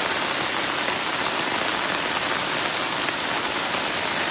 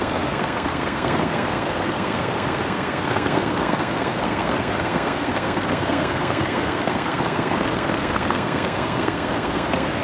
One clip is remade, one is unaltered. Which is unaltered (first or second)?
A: first